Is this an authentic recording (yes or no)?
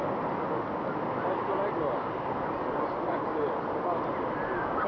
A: yes